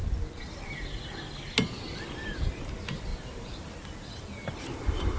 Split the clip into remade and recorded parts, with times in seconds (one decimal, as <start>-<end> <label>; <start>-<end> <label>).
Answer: 0.0-5.2 recorded